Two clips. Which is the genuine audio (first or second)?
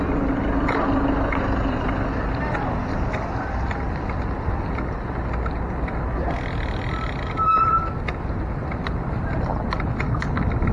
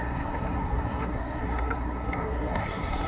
first